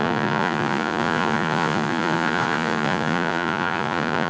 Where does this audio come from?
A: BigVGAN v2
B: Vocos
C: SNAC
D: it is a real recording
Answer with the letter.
B